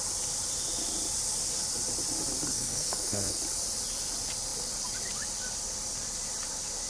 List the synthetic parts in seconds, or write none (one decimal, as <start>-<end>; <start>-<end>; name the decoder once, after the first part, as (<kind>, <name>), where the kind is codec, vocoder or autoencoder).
2.5-3.4 (codec, SNAC)